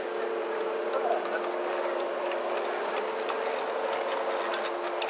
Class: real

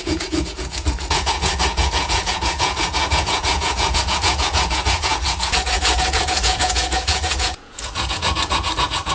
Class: fake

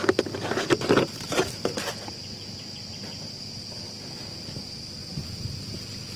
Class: real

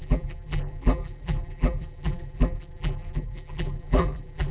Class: fake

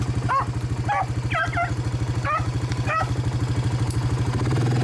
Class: real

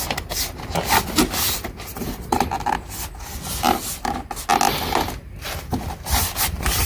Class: real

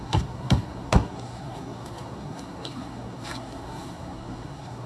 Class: fake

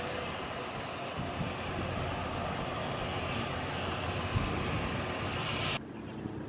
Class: real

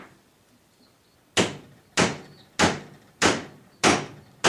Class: real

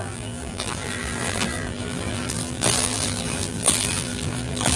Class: fake